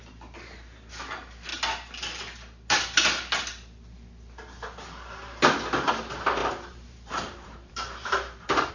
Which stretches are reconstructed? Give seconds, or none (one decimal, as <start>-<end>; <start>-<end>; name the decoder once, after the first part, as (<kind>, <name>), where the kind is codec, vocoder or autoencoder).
6.4-8.7 (vocoder, BigVGAN v2)

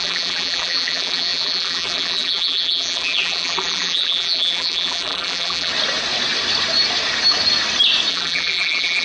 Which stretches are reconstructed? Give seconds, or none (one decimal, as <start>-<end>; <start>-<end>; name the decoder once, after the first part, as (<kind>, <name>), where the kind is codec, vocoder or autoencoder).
0.0-5.7 (vocoder, BigVGAN v2); 8.1-9.0

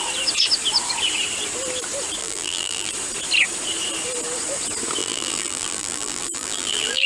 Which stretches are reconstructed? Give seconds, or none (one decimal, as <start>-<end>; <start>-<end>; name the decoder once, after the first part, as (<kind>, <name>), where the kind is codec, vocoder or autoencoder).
2.2-2.9 (vocoder, BigVGAN v2); 5.0-7.1

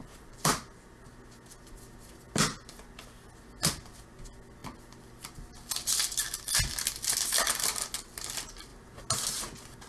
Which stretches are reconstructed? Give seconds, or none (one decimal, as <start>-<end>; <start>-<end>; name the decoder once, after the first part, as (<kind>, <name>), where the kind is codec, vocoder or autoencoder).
0.0-0.6 (vocoder, BigVGAN v2)

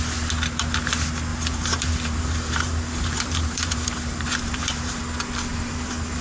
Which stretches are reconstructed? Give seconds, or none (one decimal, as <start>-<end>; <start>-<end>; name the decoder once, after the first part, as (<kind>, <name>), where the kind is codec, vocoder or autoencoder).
1.3-5.0 (vocoder, BigVGAN v2); 5.5-6.2

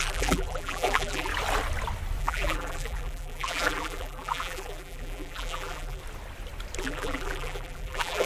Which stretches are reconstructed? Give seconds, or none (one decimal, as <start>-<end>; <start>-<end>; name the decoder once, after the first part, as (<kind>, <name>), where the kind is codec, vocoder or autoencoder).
0.0-1.3 (vocoder, BigVGAN v2); 2.2-6.0; 6.8-8.3

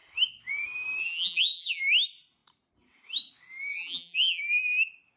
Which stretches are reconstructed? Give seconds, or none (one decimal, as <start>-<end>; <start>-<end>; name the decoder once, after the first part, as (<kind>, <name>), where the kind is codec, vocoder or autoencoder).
1.0-1.8 (vocoder, BigVGAN v2); 3.7-4.4